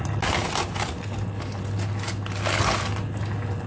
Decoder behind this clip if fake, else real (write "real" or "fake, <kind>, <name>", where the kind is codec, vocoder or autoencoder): real